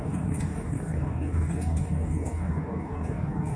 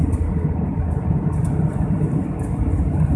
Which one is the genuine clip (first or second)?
second